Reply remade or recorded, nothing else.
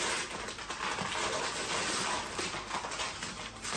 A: recorded